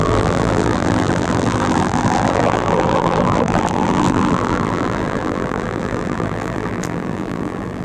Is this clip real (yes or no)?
no